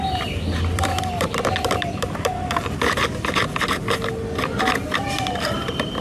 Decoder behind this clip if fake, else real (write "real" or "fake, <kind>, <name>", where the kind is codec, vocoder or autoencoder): fake, vocoder, BigVGAN v2